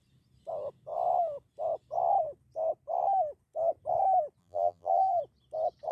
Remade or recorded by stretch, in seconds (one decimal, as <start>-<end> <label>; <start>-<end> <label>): 0.0-4.4 recorded; 4.4-5.2 remade; 5.2-5.9 recorded